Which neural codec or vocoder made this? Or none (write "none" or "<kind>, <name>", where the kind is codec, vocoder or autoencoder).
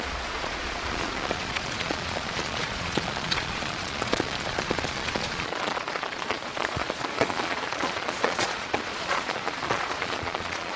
vocoder, Vocos